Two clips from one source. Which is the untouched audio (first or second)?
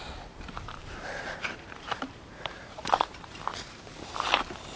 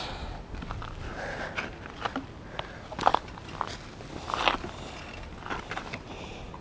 second